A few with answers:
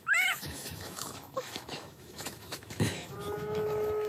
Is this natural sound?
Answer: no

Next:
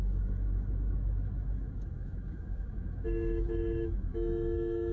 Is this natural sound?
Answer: no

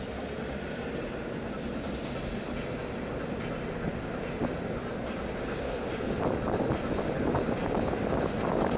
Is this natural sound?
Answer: yes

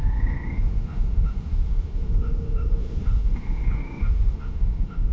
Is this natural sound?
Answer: no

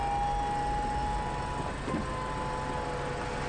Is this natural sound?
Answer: yes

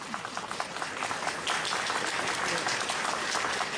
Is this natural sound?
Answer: yes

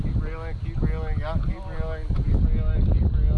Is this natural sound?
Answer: yes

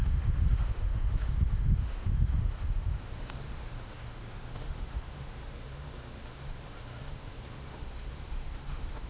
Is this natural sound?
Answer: no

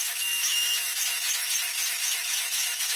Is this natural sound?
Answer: no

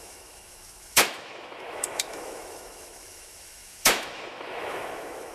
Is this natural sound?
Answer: no